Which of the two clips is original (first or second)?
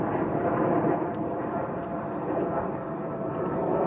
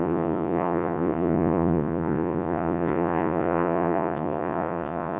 first